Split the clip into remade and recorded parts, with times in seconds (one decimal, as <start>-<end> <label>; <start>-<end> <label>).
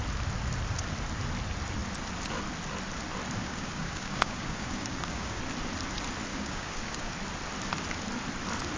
0.0-3.4 recorded; 3.4-5.4 remade; 5.4-6.3 recorded; 6.3-7.1 remade; 7.1-8.8 recorded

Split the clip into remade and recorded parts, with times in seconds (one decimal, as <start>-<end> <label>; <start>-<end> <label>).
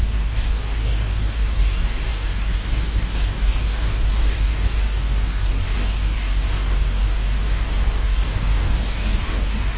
0.0-9.8 remade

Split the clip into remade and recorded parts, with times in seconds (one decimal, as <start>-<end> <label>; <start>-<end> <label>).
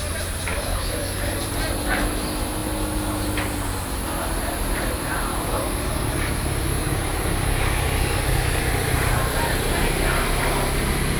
0.0-0.5 recorded; 0.5-1.3 remade; 1.3-5.3 recorded; 5.3-8.6 remade; 8.6-11.2 recorded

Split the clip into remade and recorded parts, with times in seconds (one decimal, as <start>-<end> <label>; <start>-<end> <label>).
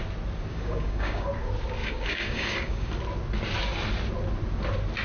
0.0-0.5 recorded; 0.5-1.3 remade; 1.3-1.8 recorded; 1.8-2.9 remade; 2.9-5.0 recorded